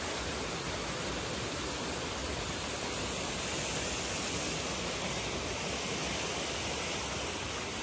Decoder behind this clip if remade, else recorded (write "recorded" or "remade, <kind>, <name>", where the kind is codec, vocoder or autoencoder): recorded